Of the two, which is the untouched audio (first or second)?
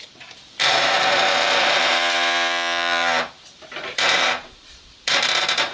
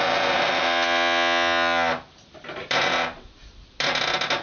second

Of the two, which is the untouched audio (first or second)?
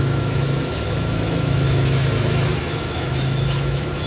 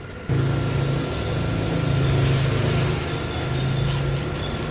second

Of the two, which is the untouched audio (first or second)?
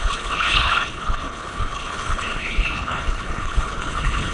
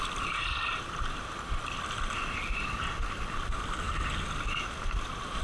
second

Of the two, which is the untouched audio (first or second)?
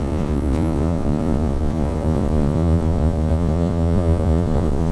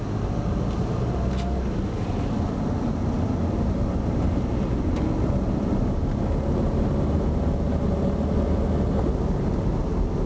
second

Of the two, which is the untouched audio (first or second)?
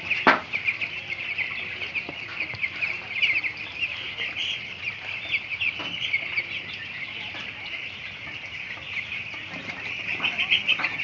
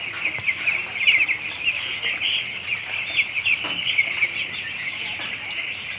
second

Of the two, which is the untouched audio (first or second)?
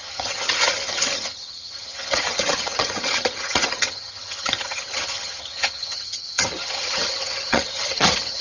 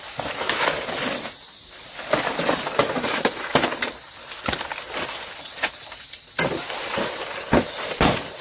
second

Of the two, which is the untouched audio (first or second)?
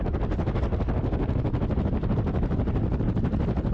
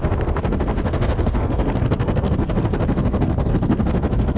first